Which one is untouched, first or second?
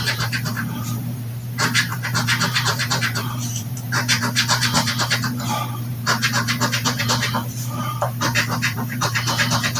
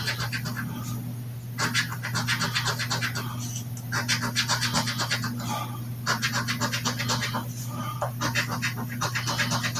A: second